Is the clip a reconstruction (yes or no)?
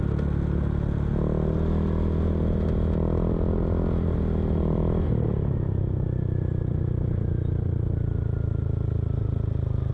no